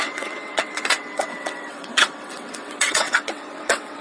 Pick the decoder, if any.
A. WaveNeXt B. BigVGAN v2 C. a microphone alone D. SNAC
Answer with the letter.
A